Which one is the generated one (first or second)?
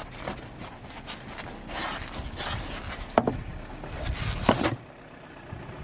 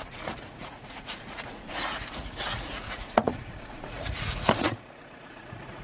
second